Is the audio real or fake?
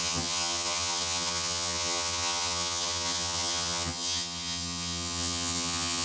fake